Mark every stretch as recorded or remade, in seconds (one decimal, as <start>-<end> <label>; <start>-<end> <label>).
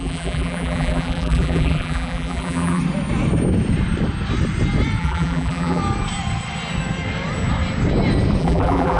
0.0-2.8 remade; 2.8-5.0 recorded; 5.0-5.8 remade; 5.8-8.4 recorded; 8.4-9.0 remade